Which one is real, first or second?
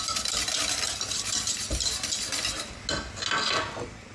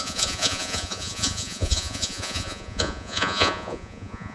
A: first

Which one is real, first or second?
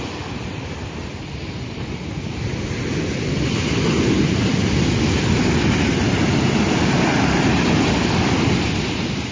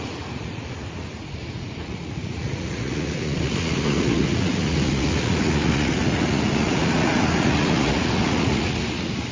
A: first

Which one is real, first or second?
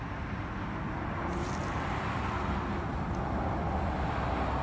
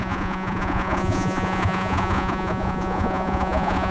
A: first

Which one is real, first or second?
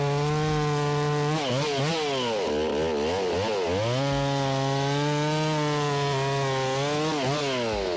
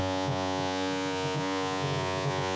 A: first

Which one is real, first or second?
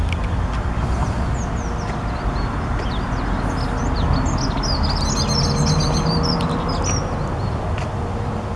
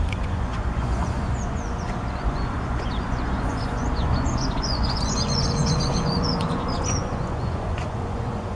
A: first